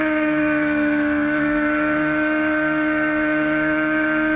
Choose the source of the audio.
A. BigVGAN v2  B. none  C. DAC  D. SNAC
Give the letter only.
C